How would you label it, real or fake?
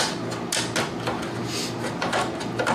real